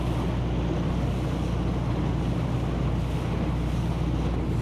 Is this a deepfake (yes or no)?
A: no